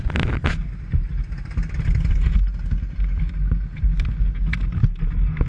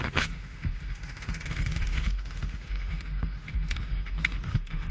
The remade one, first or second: second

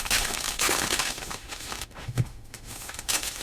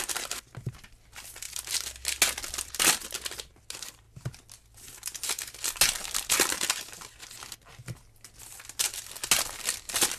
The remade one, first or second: first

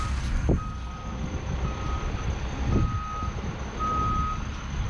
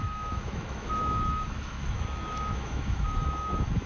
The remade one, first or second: second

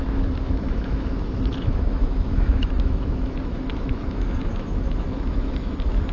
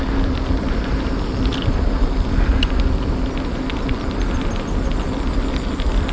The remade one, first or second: first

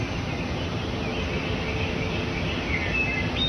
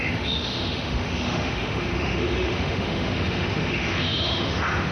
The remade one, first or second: second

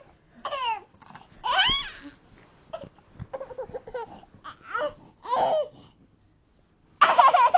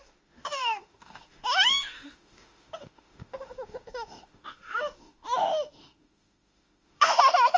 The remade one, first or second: second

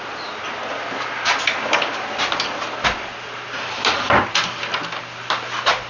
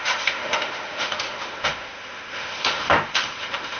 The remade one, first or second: second